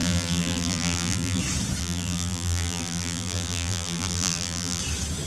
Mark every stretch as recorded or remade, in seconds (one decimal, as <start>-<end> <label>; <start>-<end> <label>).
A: 0.0-1.4 remade; 1.4-1.8 recorded; 1.8-4.8 remade; 4.8-5.3 recorded

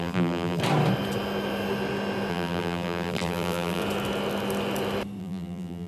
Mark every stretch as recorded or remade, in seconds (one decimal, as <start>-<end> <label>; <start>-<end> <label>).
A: 0.0-0.6 remade; 0.6-2.3 recorded; 2.3-3.8 remade; 3.8-5.2 recorded; 5.2-5.9 remade

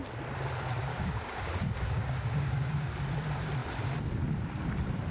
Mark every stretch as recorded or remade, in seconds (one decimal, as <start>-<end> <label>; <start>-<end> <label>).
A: 0.0-0.9 recorded; 0.9-3.1 remade; 3.1-5.1 recorded